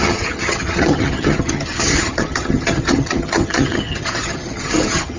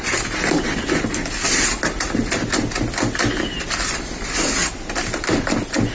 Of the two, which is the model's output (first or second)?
first